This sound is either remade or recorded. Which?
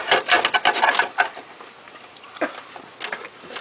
recorded